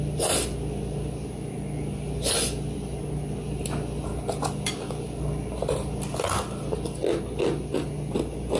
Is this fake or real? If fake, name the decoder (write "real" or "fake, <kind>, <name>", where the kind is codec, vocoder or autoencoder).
real